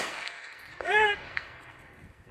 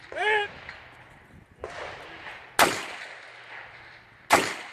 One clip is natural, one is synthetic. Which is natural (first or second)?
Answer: second